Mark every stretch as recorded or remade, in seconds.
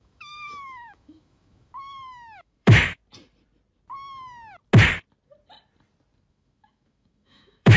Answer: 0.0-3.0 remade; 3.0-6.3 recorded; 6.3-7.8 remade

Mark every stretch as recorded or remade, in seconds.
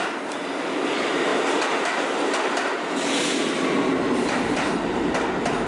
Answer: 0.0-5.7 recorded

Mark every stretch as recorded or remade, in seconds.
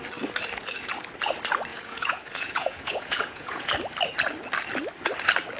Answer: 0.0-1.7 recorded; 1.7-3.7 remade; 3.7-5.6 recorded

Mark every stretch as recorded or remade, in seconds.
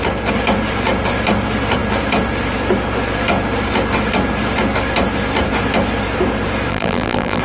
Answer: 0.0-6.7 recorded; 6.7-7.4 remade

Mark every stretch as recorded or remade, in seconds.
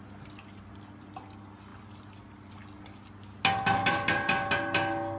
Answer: 0.0-5.2 recorded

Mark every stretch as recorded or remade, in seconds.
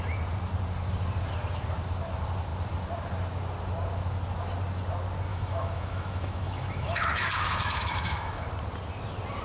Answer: 0.0-5.3 recorded; 5.3-8.4 remade; 8.4-9.4 recorded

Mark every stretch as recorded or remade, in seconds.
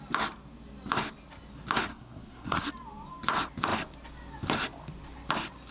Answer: 0.0-1.9 recorded; 1.9-2.7 remade; 2.7-5.7 recorded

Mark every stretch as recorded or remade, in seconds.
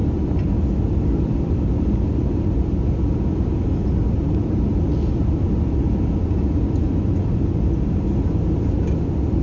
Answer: 0.0-2.9 remade; 2.9-3.8 recorded; 3.8-5.1 remade; 5.1-9.4 recorded